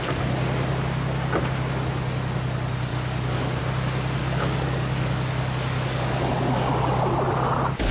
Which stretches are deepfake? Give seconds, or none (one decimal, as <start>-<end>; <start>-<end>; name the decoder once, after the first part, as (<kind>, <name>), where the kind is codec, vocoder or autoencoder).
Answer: 2.9-3.6 (codec, DAC); 4.2-7.0